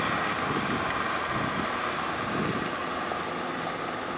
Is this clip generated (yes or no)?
no